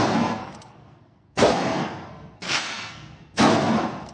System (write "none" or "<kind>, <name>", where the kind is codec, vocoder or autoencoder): codec, SNAC